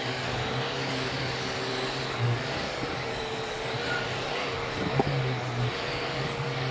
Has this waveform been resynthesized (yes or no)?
yes